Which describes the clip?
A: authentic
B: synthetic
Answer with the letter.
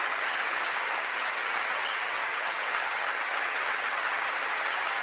B